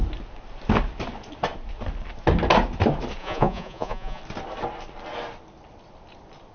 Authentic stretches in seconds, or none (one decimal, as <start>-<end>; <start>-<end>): 0.0-3.2; 4.2-6.5